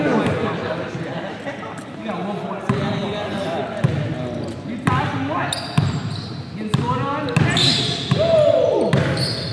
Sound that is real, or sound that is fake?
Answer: real